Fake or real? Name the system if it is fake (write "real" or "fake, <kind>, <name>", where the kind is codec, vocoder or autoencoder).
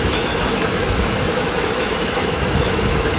fake, autoencoder, DAC-VAE